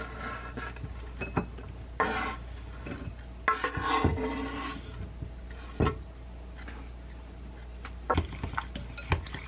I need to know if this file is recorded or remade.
recorded